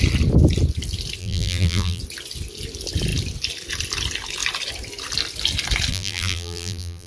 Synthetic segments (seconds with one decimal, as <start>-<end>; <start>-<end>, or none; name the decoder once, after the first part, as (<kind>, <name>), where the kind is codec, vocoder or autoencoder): 1.2-2.0 (vocoder, BigVGAN v2); 5.9-7.1